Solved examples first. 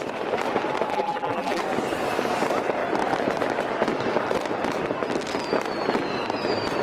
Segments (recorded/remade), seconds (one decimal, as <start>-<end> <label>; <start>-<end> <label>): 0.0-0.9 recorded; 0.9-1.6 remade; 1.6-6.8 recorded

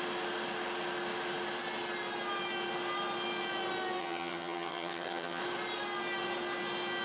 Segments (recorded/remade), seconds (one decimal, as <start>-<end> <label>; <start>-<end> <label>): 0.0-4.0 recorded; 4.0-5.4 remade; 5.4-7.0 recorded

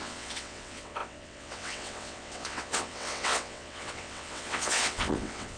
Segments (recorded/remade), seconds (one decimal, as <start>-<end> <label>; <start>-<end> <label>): 0.0-5.6 remade